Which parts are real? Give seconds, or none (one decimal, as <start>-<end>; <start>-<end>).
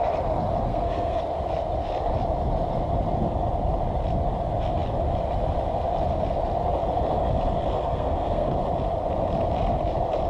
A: 0.0-0.7; 1.2-7.7; 8.6-10.3